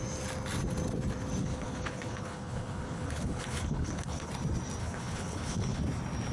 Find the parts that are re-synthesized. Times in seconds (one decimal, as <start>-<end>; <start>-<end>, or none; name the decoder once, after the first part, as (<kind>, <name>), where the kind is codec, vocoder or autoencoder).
1.4-4.3 (codec, HILCodec); 4.8-5.8